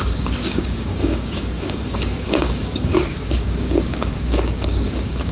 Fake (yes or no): yes